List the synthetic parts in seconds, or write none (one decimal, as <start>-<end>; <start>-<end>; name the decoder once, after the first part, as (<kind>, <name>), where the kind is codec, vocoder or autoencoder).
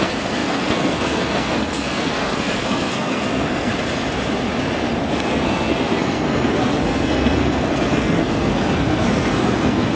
0.0-3.7 (codec, SNAC); 5.1-10.0